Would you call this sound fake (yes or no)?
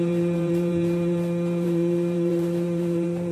yes